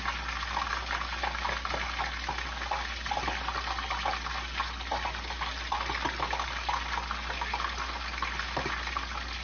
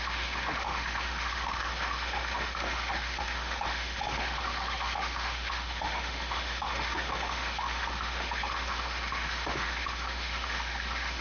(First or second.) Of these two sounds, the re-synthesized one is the second